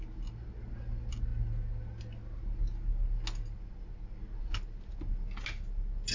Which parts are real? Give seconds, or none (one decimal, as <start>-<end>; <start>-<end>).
0.0-6.1